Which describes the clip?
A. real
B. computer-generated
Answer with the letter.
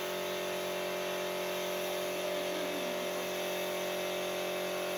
A